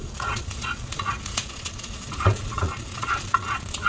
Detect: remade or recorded remade